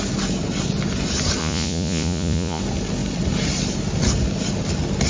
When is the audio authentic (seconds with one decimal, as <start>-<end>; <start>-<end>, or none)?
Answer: 0.0-1.4; 2.6-5.1